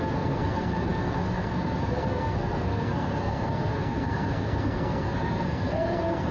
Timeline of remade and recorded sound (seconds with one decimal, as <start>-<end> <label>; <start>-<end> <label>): 0.0-6.3 remade